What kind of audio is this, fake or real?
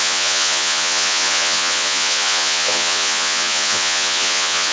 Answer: fake